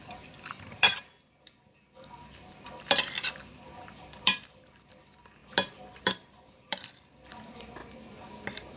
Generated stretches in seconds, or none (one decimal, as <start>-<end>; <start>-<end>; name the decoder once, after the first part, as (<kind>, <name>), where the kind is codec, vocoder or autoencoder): 0.0-0.9 (vocoder, BigVGAN v2); 1.4-7.8